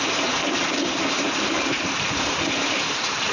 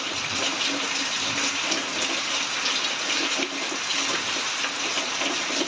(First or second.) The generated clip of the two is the first